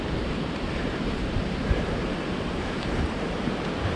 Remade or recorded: remade